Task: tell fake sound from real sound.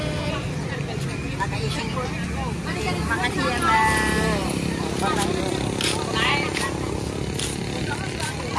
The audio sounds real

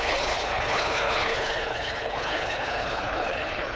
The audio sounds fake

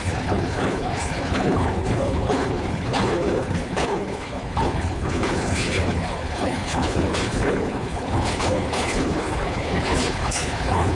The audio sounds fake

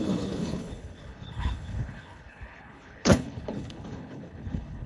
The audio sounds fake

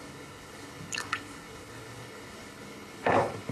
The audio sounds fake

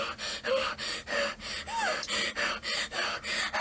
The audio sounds real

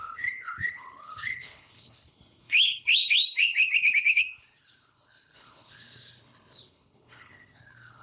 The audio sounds fake